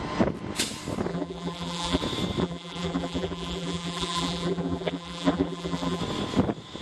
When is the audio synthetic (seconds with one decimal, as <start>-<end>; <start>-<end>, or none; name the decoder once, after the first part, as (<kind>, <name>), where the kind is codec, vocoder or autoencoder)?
1.1-2.0 (vocoder, BigVGAN v2); 2.4-6.0